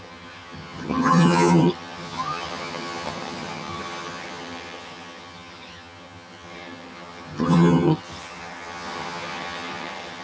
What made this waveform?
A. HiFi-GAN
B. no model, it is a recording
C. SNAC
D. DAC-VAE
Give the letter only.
A